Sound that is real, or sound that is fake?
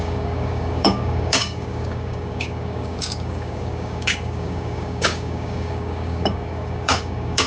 fake